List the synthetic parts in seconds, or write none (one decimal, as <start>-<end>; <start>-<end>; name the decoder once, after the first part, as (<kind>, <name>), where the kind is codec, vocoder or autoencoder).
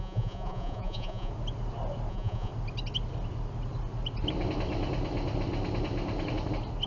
0.0-1.3 (vocoder, Vocos); 2.1-2.5